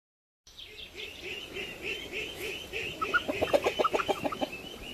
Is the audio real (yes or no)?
yes